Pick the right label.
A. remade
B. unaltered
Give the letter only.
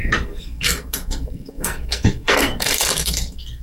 A